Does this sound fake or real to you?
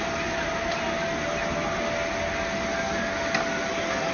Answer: real